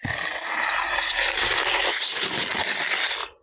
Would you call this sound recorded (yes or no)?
yes